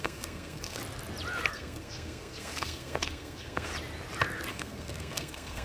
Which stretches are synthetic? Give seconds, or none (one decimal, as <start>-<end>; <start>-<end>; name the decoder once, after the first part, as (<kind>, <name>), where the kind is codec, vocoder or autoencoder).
0.0-0.8 (codec, SNAC); 1.5-3.7; 4.5-5.6